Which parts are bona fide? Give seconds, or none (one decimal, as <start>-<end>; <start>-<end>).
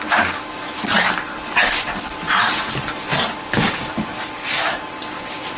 0.0-5.6